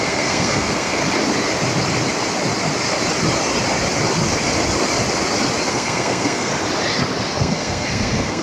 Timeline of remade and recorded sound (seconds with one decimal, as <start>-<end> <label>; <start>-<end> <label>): 0.0-1.0 remade; 1.0-5.7 recorded; 5.7-6.5 remade; 6.5-7.4 recorded; 7.4-8.4 remade